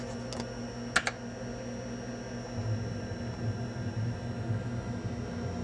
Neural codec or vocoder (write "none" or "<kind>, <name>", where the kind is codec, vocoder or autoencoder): none